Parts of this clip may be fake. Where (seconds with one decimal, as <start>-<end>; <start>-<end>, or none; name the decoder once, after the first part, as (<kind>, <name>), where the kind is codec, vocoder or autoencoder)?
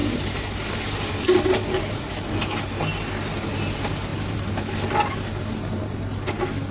none